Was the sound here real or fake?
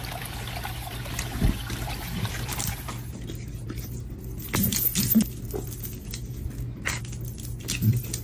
real